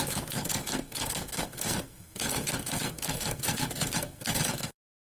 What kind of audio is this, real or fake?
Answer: fake